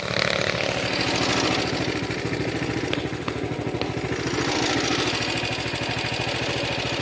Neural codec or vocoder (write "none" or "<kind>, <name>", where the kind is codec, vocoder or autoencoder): none